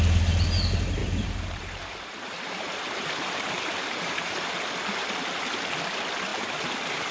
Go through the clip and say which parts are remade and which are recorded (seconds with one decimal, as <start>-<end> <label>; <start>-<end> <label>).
0.0-1.0 recorded; 1.0-4.4 remade; 4.4-7.1 recorded